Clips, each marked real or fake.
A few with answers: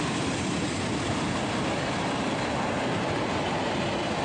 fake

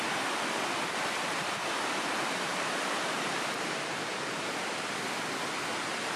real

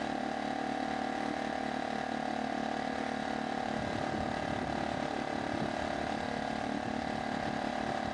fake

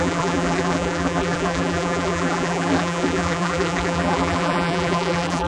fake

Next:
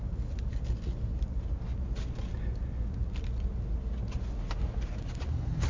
real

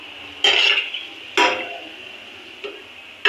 real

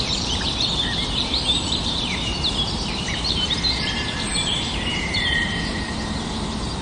fake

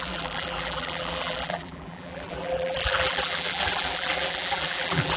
fake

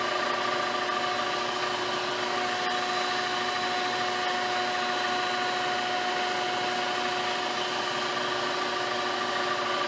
real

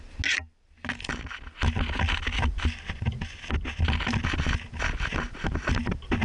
real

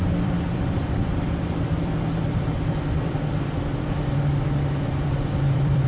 fake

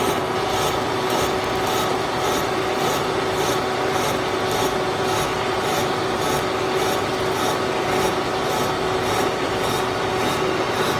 real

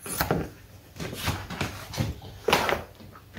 real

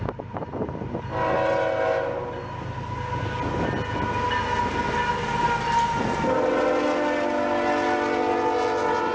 real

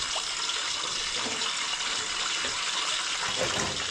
fake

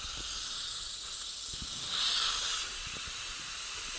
fake